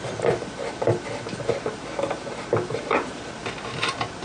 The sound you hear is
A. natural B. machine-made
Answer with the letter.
A